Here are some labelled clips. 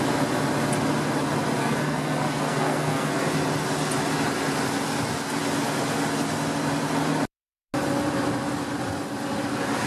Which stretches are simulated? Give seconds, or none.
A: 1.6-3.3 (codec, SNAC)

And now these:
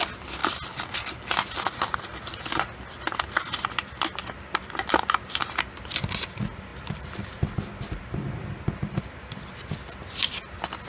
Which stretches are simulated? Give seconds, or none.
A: none

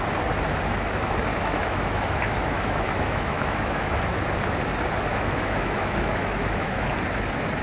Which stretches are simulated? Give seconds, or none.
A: 1.3-4.0 (autoencoder, DAC-VAE); 5.1-6.9

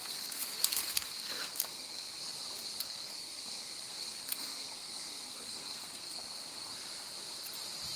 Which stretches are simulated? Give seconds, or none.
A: 0.0-2.2 (codec, SNAC); 2.8-6.7

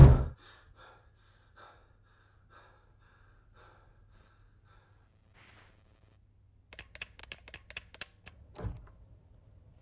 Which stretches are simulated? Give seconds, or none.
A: none

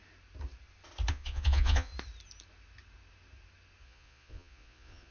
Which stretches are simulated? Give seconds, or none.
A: 1.1-1.9 (vocoder, Vocos); 3.8-5.1

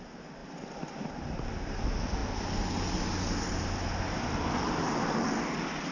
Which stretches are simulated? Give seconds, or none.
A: none